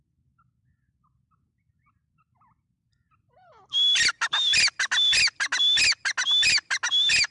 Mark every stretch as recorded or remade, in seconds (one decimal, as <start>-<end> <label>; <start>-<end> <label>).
0.0-7.3 recorded